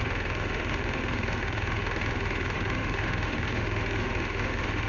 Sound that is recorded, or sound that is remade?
remade